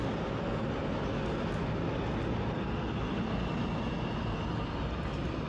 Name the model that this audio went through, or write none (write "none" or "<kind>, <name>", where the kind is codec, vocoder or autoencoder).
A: none